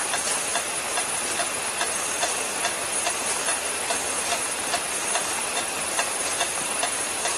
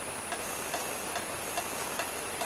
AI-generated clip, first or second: first